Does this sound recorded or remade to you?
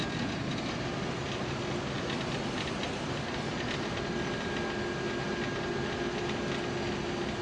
recorded